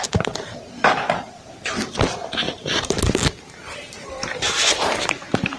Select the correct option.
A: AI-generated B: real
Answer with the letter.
A